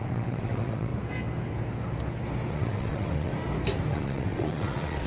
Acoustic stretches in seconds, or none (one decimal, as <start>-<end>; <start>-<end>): 0.9-2.5; 3.3-3.9